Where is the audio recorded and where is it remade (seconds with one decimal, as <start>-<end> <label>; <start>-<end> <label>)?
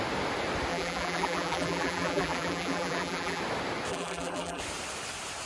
0.0-0.7 recorded; 0.7-3.4 remade; 3.4-3.9 recorded; 3.9-4.6 remade; 4.6-5.5 recorded